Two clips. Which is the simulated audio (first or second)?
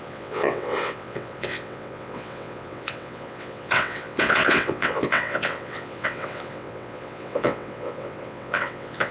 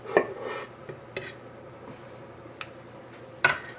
first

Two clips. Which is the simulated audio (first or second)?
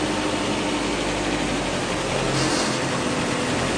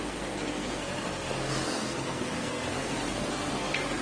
second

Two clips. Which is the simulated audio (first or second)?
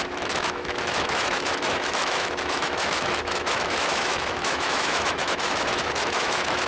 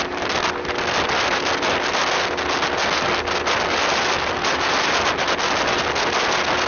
first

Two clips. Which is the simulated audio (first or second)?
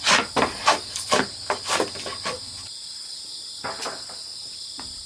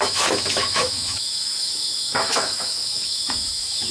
second